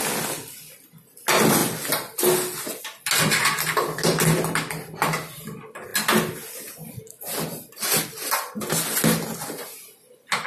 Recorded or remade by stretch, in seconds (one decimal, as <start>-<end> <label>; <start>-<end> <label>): 0.0-10.5 recorded